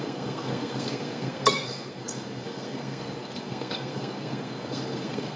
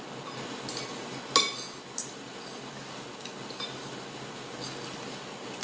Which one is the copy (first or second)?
first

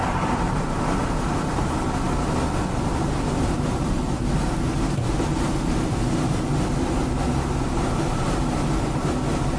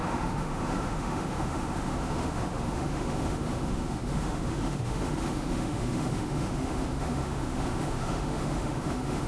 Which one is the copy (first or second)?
second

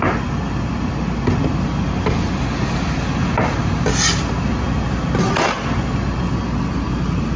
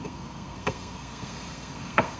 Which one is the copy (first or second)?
second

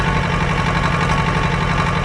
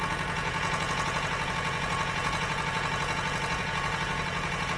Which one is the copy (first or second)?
second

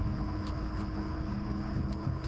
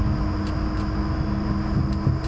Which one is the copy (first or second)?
first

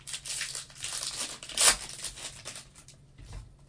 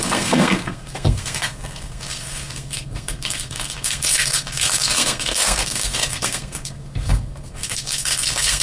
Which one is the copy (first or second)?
second